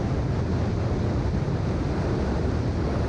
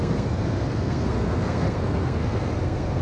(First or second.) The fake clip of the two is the second